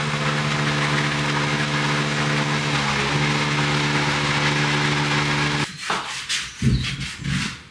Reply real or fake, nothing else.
real